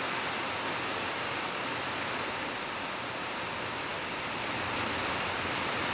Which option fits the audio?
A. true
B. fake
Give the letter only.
A